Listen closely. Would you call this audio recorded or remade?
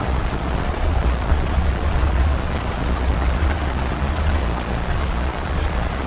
remade